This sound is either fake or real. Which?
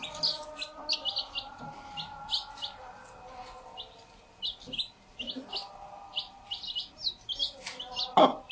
real